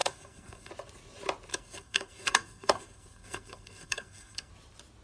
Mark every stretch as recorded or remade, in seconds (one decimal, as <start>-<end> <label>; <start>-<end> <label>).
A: 0.0-0.7 remade; 0.7-1.5 recorded; 1.5-4.5 remade; 4.5-5.0 recorded